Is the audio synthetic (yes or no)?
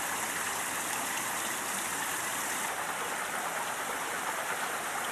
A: no